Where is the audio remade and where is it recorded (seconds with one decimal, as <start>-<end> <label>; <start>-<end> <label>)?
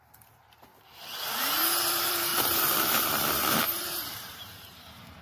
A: 0.0-0.7 remade; 0.7-1.9 recorded; 1.9-5.2 remade